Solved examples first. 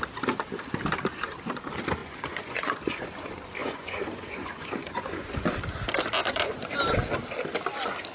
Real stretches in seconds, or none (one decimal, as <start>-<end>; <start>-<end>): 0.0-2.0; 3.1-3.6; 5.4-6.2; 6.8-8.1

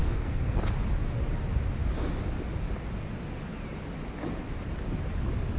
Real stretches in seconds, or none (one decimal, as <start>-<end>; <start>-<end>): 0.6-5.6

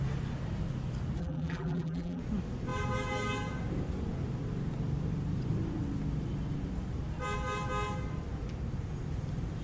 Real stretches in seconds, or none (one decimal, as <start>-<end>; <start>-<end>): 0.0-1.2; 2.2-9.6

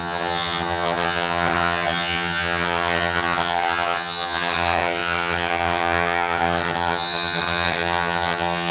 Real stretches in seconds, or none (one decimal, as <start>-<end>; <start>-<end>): none

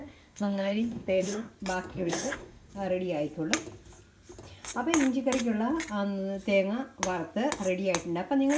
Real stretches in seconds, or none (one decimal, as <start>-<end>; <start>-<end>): 1.5-1.9; 2.7-8.6

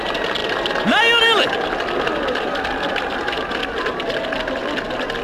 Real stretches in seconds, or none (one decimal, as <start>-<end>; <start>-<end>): 0.0-5.2